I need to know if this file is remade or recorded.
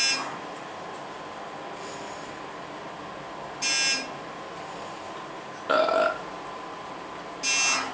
recorded